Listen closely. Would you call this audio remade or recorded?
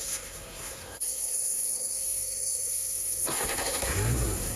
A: remade